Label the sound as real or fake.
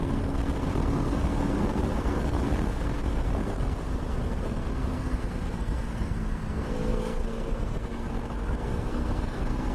fake